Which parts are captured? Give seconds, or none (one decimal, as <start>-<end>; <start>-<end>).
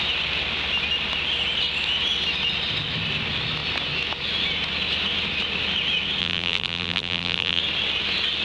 0.0-6.2; 7.6-8.4